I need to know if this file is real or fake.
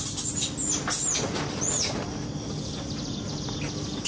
real